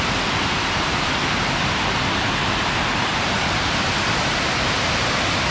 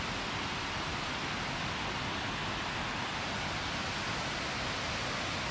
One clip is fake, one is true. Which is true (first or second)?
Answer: second